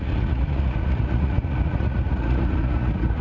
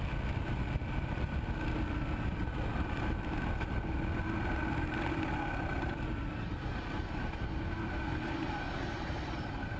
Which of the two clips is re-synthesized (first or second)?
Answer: first